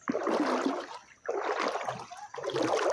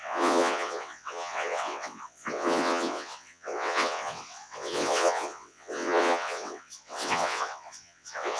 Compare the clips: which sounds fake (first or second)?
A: second